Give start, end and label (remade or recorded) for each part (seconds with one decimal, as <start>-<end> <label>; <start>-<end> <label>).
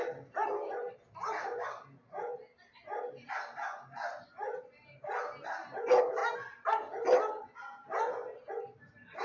0.0-9.2 recorded